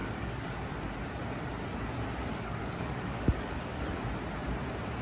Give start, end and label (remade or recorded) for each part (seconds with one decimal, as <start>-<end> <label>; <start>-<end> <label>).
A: 0.0-0.7 remade; 0.7-2.3 recorded; 2.3-3.8 remade; 3.8-5.0 recorded